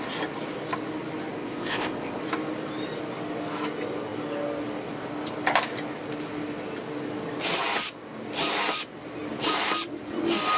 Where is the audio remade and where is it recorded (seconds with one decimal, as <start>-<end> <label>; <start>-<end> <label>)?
0.0-1.3 recorded; 1.3-2.2 remade; 2.2-10.6 recorded